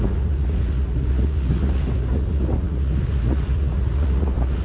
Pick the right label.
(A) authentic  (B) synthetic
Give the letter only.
B